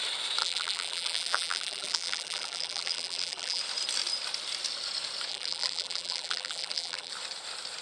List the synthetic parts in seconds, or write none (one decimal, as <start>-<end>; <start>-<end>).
0.4-3.6; 5.3-7.1